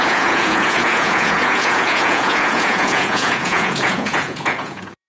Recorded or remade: remade